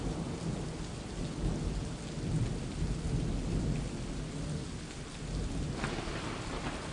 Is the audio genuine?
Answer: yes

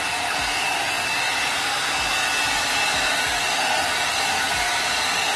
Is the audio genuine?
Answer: yes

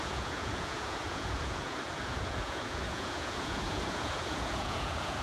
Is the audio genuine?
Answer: no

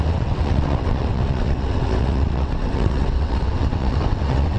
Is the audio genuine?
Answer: no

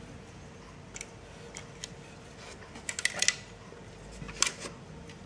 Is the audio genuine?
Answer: yes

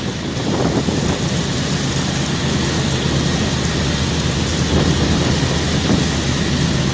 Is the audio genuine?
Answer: yes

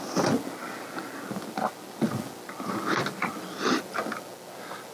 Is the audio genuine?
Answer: yes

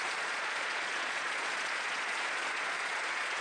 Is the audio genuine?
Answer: no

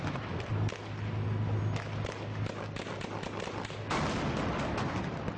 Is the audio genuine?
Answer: yes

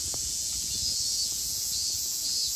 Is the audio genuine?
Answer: no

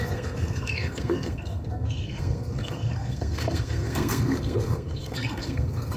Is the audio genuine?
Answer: no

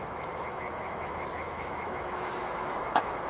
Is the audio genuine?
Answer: no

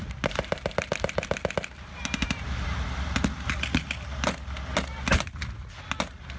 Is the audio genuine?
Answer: yes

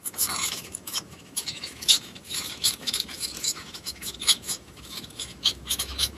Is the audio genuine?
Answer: no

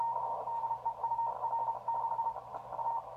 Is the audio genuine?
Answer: yes